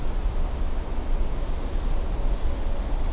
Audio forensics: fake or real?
real